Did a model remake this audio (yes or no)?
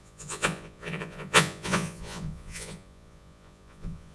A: yes